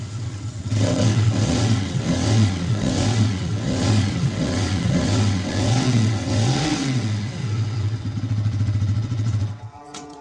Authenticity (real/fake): fake